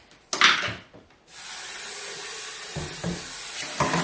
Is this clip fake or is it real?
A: real